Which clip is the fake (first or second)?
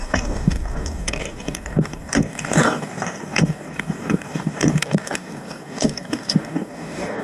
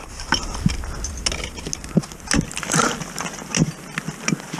first